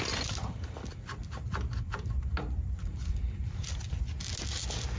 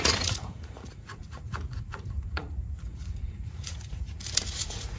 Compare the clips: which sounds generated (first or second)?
second